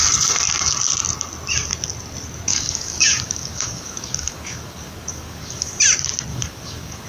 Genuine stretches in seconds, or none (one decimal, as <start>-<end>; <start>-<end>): 0.0-2.5; 5.8-6.3